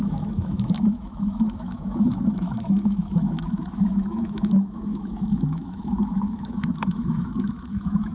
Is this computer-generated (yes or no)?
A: yes